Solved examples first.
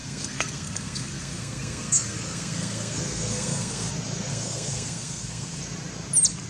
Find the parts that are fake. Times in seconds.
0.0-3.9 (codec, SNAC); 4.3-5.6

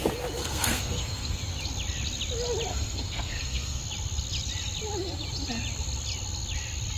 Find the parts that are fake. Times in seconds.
0.4-1.4 (codec, SNAC); 2.7-3.8